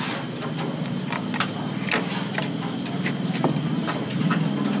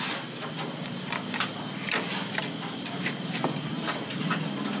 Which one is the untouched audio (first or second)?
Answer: first